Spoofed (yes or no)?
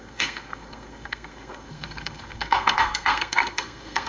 yes